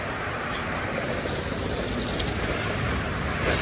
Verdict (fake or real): fake